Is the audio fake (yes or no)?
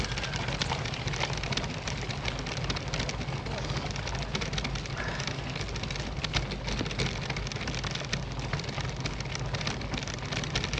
no